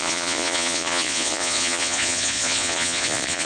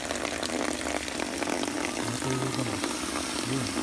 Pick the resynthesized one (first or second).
first